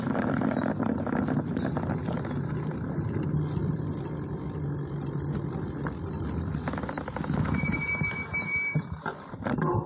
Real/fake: real